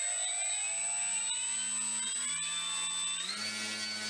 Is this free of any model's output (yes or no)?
yes